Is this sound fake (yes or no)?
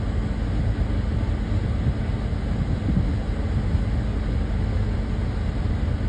no